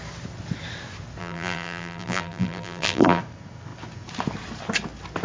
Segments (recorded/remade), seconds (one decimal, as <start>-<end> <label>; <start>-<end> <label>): 0.0-1.2 recorded; 1.2-3.2 remade; 3.2-5.2 recorded